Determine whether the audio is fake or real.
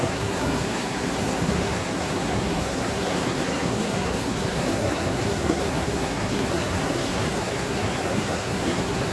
fake